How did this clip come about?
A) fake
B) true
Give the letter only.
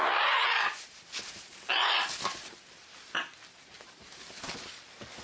B